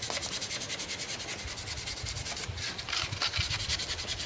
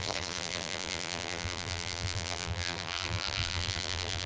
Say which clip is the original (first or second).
first